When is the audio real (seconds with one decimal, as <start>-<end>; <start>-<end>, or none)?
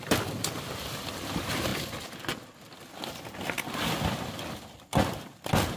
0.0-5.8